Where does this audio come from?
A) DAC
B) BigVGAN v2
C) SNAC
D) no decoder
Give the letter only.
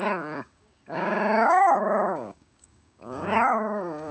A